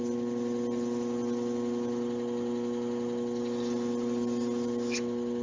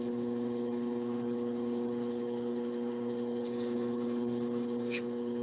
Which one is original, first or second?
first